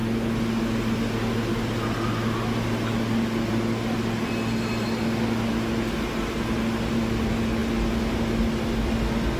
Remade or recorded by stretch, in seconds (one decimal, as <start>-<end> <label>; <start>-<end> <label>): 0.0-9.4 recorded